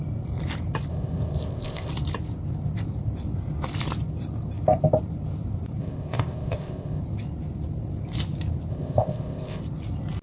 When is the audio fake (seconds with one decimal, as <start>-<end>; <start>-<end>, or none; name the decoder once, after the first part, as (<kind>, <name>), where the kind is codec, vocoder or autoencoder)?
0.9-1.9 (codec, ZipCodec); 5.8-7.0; 8.7-9.6